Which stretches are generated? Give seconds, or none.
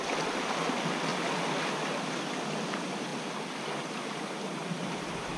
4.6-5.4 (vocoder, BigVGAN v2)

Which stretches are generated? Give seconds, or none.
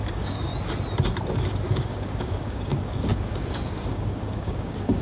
0.0-0.5 (codec, DAC); 1.7-5.0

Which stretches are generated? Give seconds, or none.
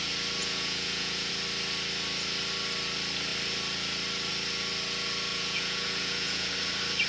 0.4-1.3 (vocoder, Vocos); 5.3-6.5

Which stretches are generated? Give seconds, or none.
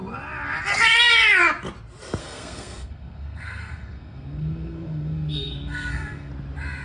2.2-6.3 (codec, SNAC)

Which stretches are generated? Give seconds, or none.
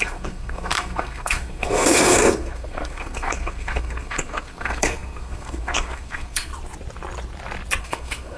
0.0-6.5 (codec, SNAC); 7.8-8.4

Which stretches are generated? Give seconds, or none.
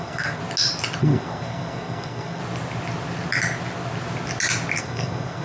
0.0-0.4 (codec, SNAC); 1.0-2.4; 4.8-5.4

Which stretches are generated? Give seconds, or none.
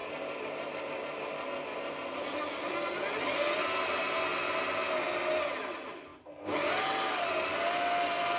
none